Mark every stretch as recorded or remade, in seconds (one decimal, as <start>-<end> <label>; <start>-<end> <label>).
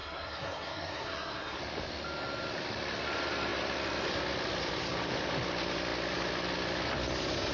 0.0-1.6 remade; 1.6-7.5 recorded